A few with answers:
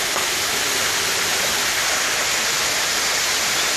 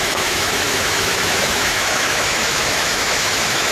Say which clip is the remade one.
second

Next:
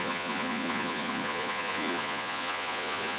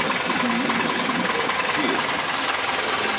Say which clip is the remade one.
first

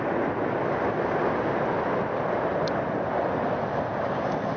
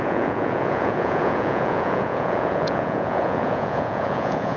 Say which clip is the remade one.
second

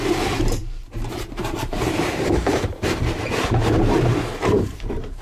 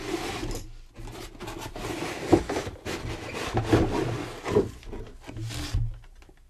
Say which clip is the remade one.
first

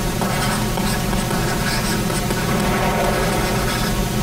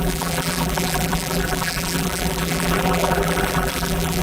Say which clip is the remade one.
second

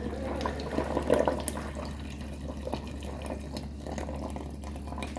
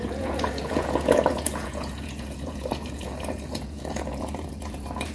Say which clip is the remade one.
second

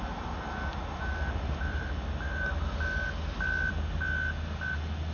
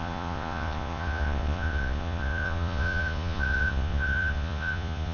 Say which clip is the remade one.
second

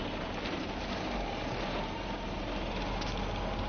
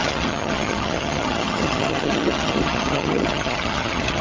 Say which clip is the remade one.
second